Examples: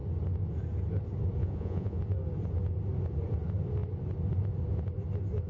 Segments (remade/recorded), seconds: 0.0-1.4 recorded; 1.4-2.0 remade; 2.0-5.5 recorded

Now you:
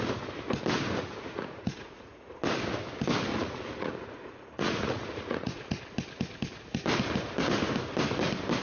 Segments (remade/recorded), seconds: 0.0-1.0 recorded; 1.0-2.3 remade; 2.3-3.3 recorded; 3.3-5.8 remade; 5.8-8.6 recorded